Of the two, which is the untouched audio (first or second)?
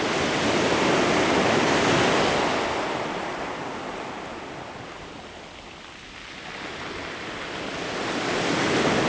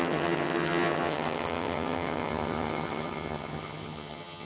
first